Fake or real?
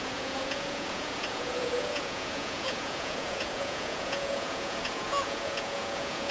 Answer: fake